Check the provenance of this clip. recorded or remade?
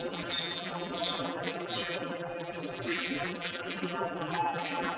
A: remade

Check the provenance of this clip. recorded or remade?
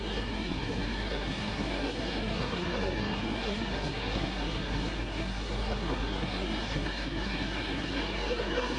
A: remade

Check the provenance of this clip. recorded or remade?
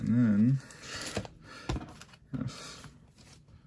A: recorded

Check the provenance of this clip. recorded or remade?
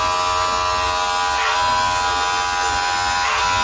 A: recorded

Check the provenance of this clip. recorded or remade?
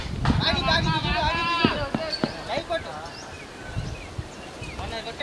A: recorded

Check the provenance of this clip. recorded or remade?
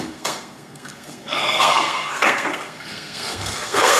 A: remade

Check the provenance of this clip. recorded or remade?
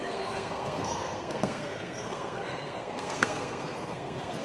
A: remade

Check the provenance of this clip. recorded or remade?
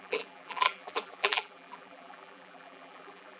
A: remade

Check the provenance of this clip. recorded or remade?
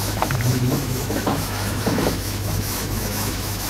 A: remade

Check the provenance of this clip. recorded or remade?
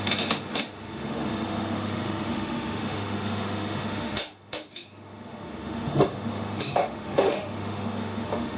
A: remade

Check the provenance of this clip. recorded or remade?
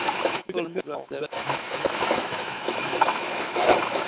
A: remade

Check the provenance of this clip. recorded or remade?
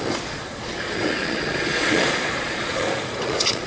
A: remade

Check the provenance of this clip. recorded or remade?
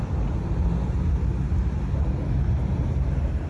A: recorded